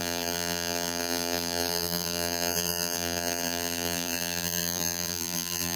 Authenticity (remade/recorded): remade